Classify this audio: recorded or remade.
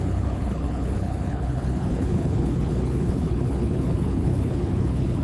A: remade